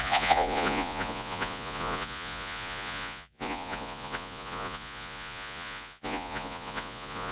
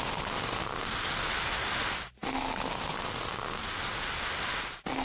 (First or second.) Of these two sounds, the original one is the second